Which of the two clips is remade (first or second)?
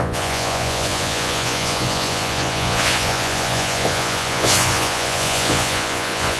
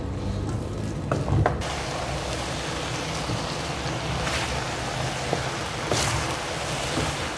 first